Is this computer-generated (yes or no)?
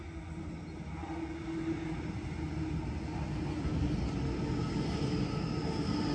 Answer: no